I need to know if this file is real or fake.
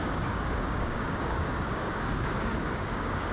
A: fake